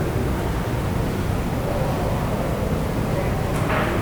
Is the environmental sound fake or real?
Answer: real